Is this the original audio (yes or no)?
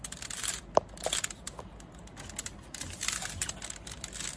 yes